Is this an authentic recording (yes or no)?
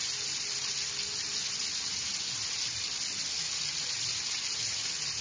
yes